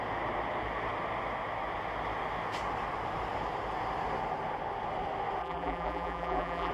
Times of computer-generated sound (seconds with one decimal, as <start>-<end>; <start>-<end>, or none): 5.4-6.7